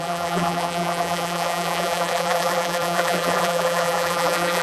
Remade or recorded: remade